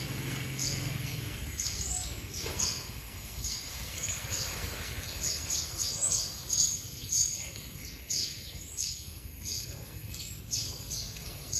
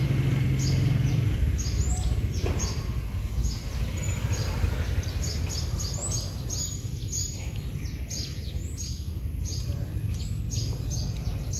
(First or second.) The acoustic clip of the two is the second